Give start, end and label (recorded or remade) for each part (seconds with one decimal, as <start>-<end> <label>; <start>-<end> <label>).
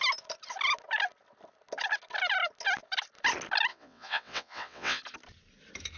0.0-3.7 recorded; 3.7-5.0 remade; 5.0-6.0 recorded